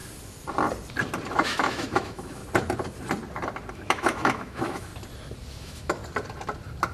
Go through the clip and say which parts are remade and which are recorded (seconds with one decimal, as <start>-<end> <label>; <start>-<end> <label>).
0.0-1.3 recorded; 1.3-2.4 remade; 2.4-3.7 recorded; 3.7-4.9 remade; 4.9-5.6 recorded; 5.6-6.0 remade; 6.0-6.9 recorded